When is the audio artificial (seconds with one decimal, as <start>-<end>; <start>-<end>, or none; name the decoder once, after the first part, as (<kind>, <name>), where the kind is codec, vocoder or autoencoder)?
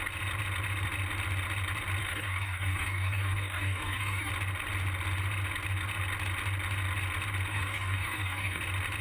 2.0-4.3 (codec, DAC); 7.5-8.6